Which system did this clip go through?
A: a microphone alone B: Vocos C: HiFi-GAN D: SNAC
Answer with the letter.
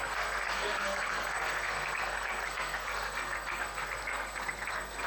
D